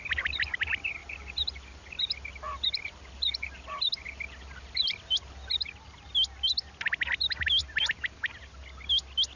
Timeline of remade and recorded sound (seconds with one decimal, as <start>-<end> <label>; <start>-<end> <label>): 0.0-1.0 recorded; 1.0-5.8 remade; 5.8-7.6 recorded; 7.6-8.4 remade; 8.4-9.4 recorded